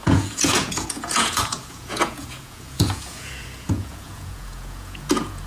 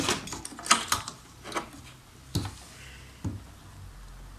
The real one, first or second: second